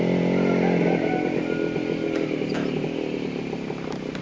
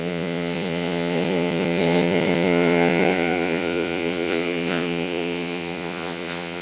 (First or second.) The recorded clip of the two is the first